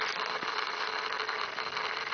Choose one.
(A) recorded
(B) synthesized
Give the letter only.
A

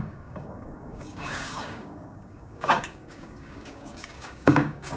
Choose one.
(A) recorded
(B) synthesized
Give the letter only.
B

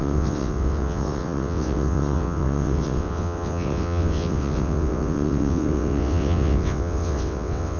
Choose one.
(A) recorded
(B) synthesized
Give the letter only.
B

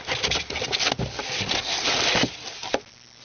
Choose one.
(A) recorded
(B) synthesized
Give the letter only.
A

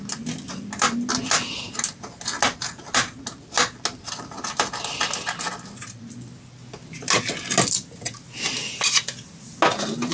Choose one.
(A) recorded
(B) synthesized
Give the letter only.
A